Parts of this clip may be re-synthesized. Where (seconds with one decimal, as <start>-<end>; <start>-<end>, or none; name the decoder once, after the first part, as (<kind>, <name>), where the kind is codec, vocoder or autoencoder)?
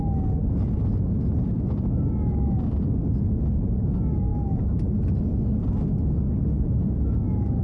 none